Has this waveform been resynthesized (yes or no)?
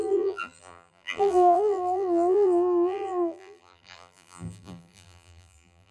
yes